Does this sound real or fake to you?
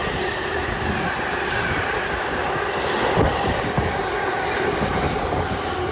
real